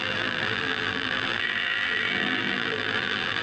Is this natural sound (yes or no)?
no